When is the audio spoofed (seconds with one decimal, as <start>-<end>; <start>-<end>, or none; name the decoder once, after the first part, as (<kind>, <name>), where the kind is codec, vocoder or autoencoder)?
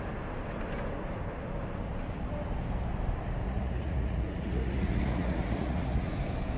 3.4-6.1 (vocoder, Vocos)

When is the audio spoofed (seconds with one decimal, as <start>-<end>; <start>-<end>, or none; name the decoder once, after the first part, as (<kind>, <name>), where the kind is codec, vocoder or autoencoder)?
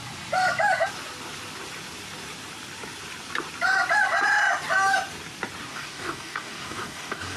5.7-7.4 (codec, DAC)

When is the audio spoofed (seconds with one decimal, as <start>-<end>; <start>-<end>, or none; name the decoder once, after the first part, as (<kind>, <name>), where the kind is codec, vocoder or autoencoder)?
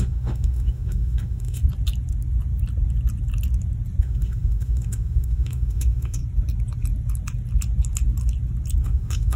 0.0-1.6 (autoencoder, DAC-VAE); 4.0-6.2; 8.8-9.4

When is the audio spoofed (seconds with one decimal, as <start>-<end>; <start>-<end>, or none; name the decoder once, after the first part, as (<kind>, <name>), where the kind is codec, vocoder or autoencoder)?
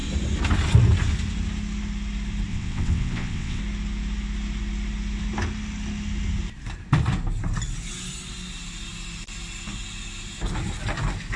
2.5-3.6 (vocoder, WaveNeXt)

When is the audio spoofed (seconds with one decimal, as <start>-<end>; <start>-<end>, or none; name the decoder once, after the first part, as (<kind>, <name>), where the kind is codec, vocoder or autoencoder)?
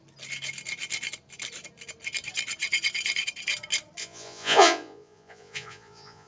4.0-6.3 (vocoder, Vocos)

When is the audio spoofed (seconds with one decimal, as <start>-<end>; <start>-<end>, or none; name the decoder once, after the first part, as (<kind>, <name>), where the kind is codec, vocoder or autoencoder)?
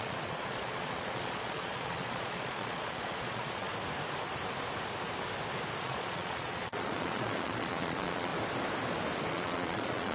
0.0-3.7 (vocoder, Vocos); 5.8-8.3; 9.3-10.1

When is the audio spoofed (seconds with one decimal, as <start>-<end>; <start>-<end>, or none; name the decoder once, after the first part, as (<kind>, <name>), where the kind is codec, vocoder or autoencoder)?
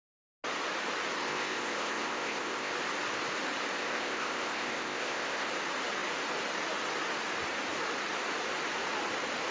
1.2-2.7 (codec, ZipCodec); 3.8-5.5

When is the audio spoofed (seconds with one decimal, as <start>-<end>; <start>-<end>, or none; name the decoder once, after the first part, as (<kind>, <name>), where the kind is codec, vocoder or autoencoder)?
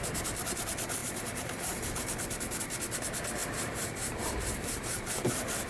1.0-2.6 (vocoder, BigVGAN v2); 3.4-5.7